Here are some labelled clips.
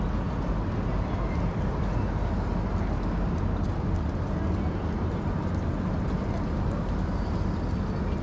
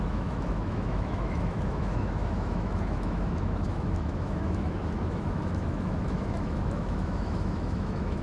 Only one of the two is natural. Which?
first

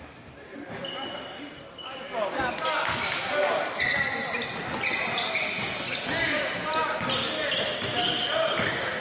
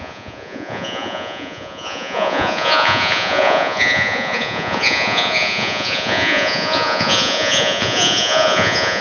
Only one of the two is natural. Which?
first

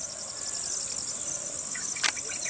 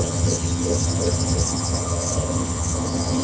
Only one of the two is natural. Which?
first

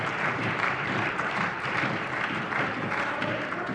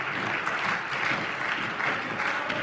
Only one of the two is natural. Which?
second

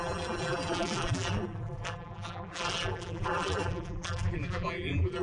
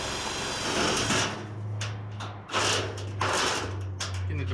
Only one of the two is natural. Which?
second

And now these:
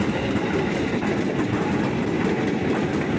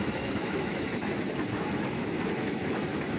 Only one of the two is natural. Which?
first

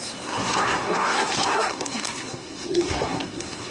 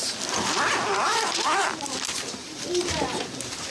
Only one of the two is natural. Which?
second